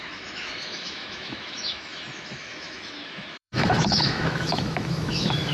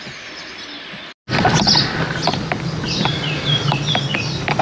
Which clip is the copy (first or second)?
first